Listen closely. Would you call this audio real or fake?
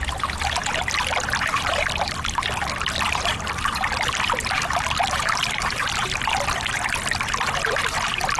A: real